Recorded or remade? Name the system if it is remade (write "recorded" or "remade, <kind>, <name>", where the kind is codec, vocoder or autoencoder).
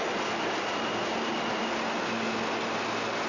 recorded